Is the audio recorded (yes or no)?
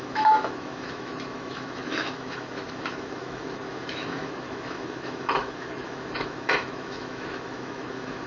no